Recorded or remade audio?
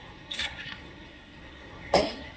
remade